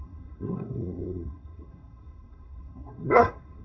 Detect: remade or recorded remade